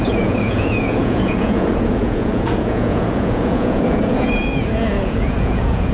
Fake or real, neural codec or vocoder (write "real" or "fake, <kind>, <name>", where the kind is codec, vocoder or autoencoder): fake, vocoder, Vocos